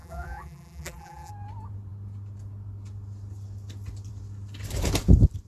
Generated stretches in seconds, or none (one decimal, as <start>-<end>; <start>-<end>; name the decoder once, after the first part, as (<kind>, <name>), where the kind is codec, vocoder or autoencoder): 0.0-1.3 (vocoder, BigVGAN v2)